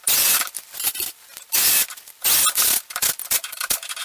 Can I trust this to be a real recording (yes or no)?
yes